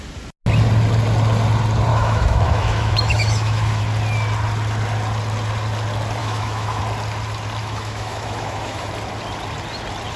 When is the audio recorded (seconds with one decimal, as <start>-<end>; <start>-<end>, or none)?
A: 0.0-1.9; 3.8-6.2; 6.8-7.6; 8.9-10.2